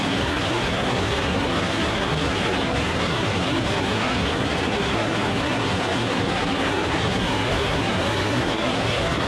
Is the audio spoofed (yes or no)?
yes